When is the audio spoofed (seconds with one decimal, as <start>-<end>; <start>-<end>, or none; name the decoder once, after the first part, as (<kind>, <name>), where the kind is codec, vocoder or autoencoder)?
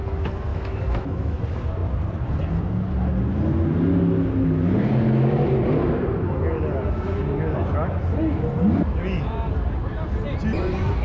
0.5-1.4 (autoencoder, DAC-VAE)